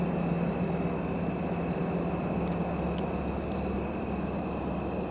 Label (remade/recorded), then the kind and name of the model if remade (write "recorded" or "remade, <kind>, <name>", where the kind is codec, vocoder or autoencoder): recorded